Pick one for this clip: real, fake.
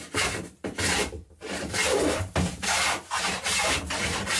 fake